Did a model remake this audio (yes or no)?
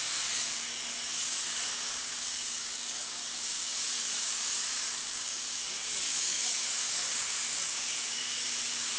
yes